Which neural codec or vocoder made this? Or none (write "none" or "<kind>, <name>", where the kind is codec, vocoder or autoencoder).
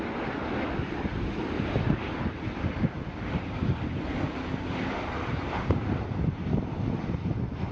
none